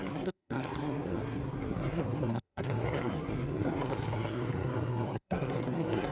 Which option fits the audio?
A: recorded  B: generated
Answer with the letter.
B